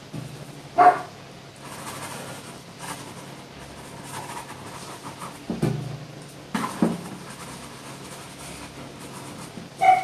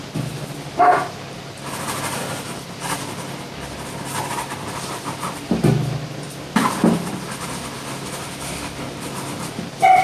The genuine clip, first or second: first